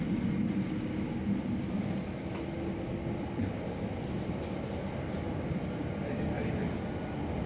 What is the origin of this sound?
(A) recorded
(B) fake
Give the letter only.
A